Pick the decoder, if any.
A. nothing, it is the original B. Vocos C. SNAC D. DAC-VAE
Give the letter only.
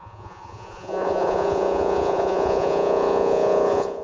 B